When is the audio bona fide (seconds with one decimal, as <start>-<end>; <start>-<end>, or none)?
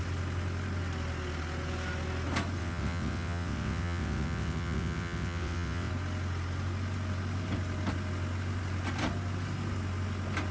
0.0-2.6; 5.9-10.5